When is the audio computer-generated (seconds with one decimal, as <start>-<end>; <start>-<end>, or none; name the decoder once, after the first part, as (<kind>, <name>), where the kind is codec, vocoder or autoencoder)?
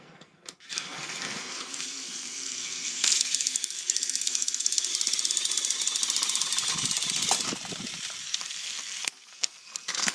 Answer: 0.0-4.9 (codec, SNAC); 8.2-10.1